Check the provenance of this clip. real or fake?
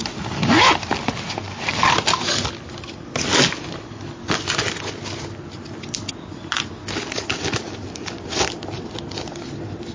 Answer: real